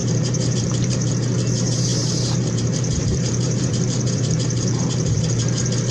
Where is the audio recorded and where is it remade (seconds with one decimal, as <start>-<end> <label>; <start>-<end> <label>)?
0.0-1.1 remade; 1.1-1.9 recorded; 1.9-5.4 remade; 5.4-5.9 recorded